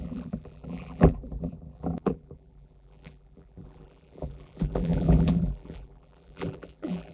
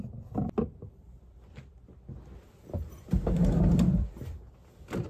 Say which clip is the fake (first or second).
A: first